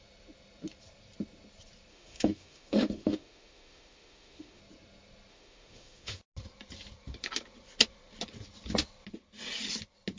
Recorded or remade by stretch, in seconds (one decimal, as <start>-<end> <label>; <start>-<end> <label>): 0.0-1.9 recorded; 1.9-4.6 remade; 4.6-5.3 recorded; 5.3-6.2 remade; 6.2-10.2 recorded